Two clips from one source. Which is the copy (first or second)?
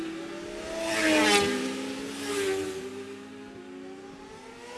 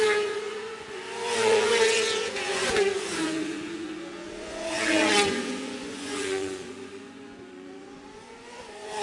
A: second